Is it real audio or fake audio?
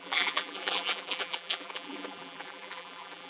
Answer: fake